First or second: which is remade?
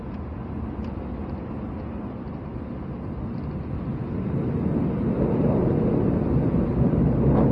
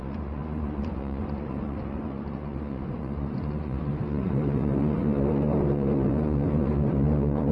second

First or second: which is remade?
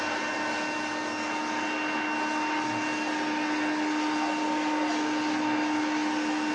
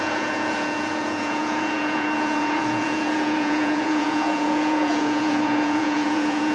second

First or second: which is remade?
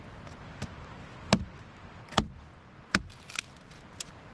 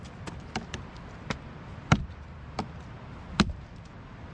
second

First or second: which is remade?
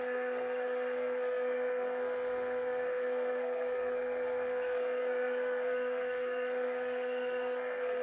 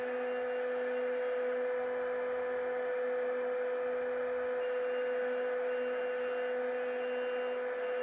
first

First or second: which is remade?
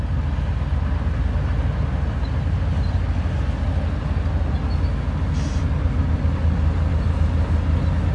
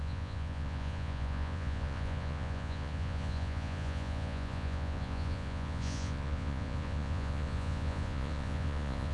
second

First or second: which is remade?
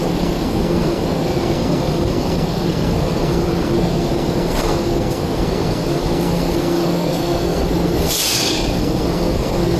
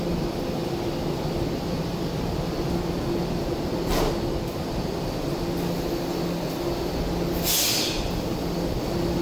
first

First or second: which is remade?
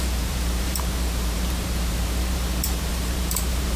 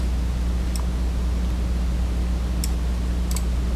first